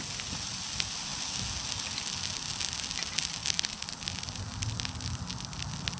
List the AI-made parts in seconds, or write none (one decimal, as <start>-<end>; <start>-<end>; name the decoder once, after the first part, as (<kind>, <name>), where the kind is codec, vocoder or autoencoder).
none